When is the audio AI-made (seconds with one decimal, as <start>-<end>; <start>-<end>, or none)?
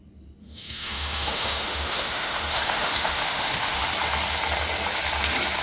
0.4-3.8